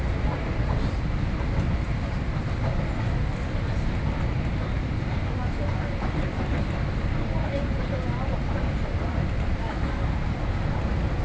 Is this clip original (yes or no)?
yes